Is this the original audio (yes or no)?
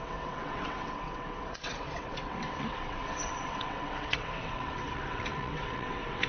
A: no